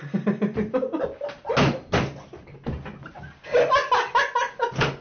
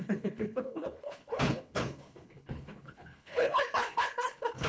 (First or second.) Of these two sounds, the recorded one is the first